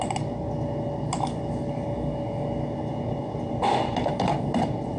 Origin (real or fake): real